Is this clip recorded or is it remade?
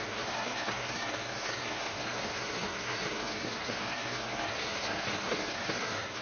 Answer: remade